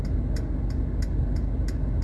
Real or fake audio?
real